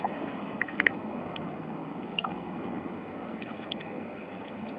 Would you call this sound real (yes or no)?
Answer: no